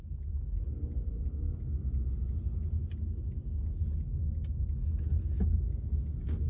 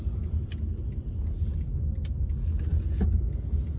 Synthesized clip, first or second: second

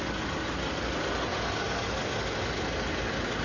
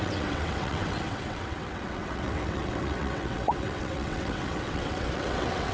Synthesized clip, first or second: second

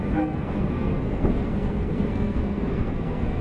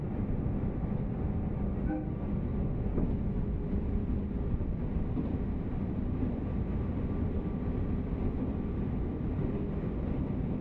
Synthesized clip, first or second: first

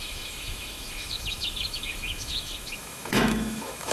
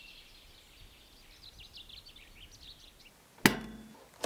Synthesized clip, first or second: first